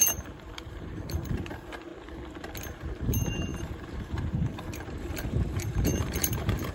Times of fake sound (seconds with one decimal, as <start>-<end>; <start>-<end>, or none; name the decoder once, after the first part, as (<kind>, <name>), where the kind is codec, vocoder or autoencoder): 0.0-1.9 (vocoder, BigVGAN v2); 2.6-6.7